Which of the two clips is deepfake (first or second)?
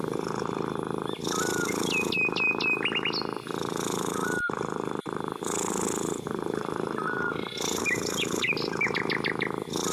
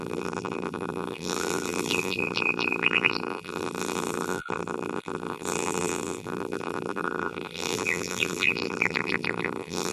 second